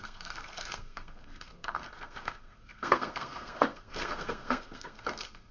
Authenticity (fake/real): fake